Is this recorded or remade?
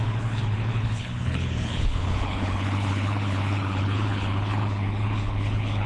remade